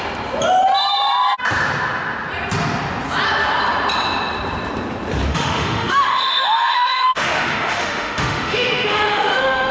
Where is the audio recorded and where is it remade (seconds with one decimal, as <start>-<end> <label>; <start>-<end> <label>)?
0.0-5.3 recorded; 5.3-9.7 remade